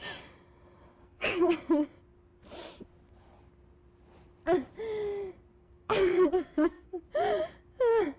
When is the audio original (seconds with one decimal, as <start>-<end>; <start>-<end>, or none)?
0.0-1.0; 1.5-5.6; 7.0-8.2